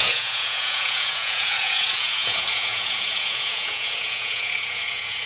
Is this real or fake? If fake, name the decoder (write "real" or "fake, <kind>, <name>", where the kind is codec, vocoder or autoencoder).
fake, vocoder, Vocos